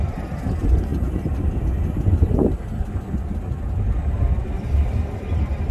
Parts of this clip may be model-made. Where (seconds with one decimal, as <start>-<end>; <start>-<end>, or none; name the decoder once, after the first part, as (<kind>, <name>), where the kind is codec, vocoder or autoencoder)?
none